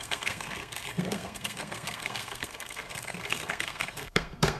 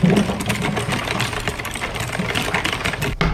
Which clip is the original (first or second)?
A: second